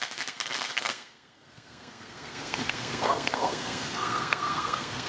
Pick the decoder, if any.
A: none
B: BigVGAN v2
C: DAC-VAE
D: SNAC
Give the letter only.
D